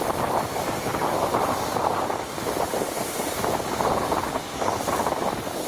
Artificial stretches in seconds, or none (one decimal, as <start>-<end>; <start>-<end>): none

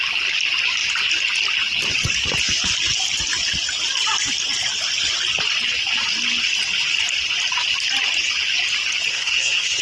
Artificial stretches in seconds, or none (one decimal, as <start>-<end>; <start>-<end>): 9.1-9.8

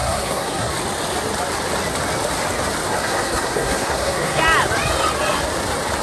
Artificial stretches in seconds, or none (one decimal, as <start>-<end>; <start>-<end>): 0.0-0.7; 2.9-4.4

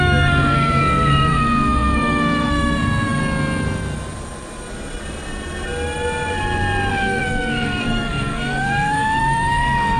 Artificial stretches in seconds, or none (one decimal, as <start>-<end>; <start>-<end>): 0.0-3.2; 6.9-10.0